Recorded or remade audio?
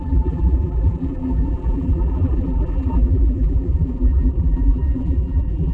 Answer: remade